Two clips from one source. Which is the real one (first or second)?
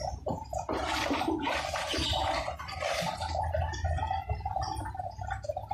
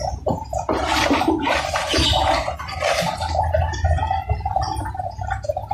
second